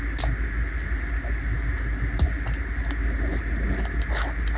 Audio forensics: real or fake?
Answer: real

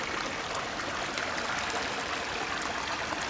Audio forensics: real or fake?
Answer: real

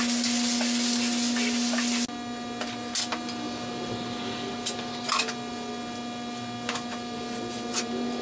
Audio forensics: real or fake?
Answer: real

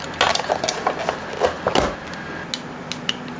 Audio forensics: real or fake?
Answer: real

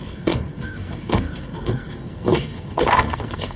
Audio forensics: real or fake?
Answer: fake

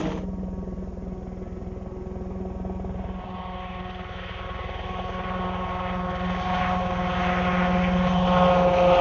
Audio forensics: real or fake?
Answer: real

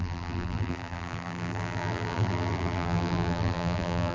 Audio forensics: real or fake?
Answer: fake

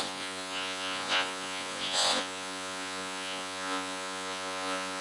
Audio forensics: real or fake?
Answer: fake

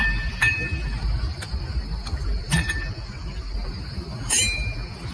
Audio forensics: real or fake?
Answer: fake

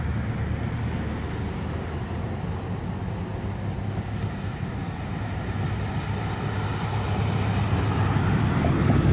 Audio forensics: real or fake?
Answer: real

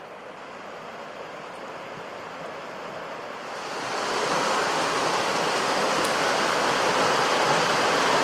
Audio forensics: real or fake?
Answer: real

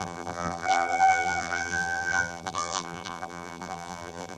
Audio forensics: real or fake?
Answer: fake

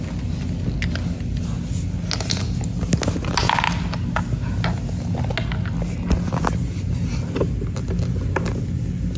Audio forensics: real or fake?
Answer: real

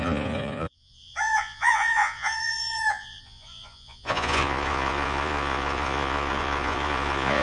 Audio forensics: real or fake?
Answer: fake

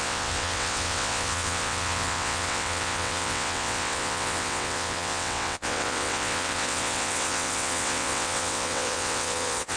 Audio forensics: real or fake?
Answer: fake